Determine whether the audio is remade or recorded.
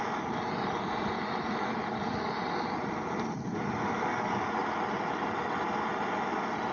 recorded